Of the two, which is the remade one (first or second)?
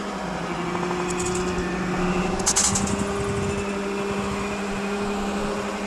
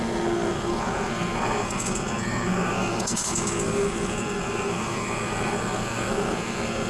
second